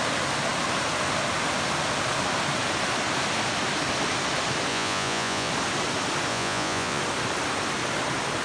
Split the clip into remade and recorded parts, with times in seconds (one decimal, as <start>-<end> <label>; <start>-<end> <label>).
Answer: 0.0-4.7 recorded; 4.7-5.5 remade; 5.5-6.3 recorded; 6.3-7.0 remade; 7.0-8.4 recorded